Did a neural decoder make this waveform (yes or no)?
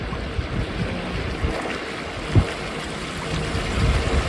no